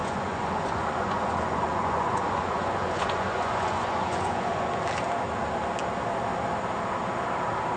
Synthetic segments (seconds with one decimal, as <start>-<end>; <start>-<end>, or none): 0.0-4.7